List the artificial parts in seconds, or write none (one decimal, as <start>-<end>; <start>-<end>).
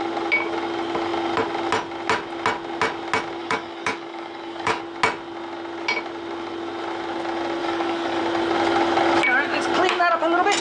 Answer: 3.4-4.8; 7.6-8.2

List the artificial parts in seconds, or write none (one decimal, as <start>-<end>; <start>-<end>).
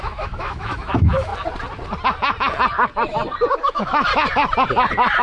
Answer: 0.0-1.3; 3.5-4.1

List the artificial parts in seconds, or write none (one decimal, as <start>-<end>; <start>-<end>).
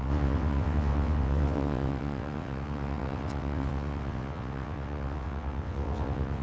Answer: 0.0-6.4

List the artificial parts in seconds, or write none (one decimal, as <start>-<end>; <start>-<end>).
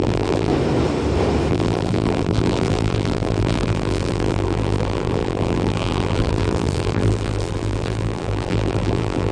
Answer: 0.0-0.5; 1.5-9.3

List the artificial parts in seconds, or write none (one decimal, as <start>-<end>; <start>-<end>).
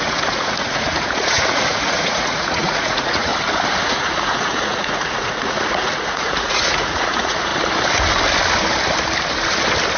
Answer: 0.0-3.3; 3.8-7.5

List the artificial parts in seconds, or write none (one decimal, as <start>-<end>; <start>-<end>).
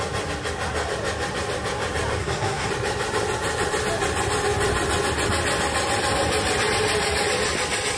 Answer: 2.2-2.7